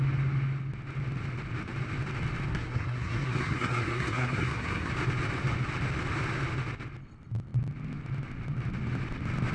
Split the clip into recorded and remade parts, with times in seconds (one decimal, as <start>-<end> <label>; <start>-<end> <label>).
0.0-2.5 recorded; 2.5-4.9 remade; 4.9-9.5 recorded

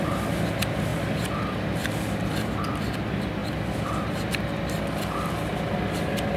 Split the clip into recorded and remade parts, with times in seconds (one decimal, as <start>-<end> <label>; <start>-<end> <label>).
0.0-6.4 recorded